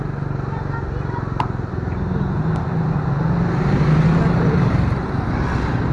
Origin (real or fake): real